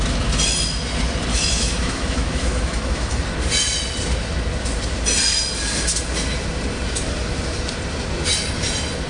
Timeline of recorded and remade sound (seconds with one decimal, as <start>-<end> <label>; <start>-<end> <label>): 0.0-1.3 recorded; 1.3-3.2 remade; 3.2-9.1 recorded